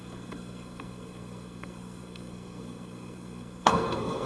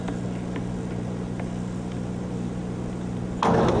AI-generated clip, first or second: first